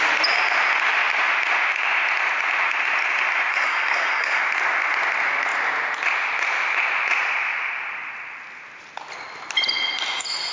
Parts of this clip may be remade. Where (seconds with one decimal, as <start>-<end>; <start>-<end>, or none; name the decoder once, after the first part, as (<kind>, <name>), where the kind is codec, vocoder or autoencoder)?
3.5-4.4 (codec, SNAC)